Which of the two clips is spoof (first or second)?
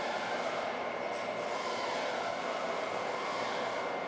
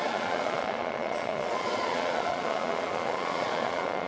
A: second